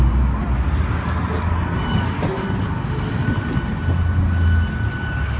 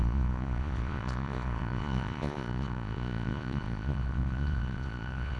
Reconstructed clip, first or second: second